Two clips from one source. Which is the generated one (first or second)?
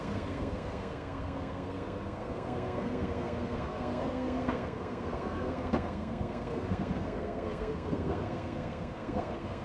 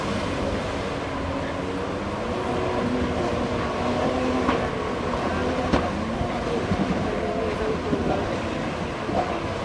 first